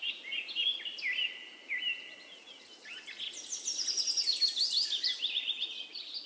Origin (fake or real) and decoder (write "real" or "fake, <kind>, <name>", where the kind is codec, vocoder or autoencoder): real